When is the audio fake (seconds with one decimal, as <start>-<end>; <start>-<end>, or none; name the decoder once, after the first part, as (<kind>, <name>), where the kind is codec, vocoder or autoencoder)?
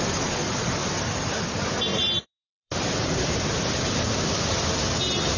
0.8-1.5 (vocoder, BigVGAN v2); 1.9-4.1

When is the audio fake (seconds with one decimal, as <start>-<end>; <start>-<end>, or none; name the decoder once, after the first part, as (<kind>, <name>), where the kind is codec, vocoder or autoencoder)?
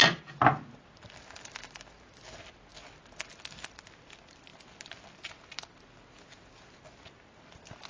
none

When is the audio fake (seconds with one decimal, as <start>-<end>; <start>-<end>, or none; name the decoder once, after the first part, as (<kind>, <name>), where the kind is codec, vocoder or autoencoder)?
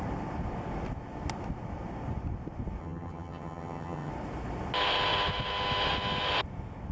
2.8-4.1 (vocoder, HiFi-GAN)